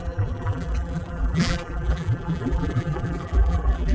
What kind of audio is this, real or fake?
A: fake